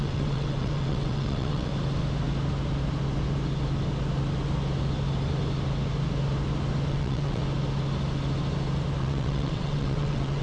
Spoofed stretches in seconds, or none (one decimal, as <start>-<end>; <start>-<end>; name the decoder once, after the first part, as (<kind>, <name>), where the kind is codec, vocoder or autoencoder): 0.0-1.7 (vocoder, WaveNeXt); 6.9-7.4; 9.0-10.4